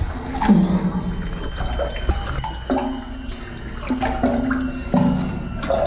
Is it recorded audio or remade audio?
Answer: recorded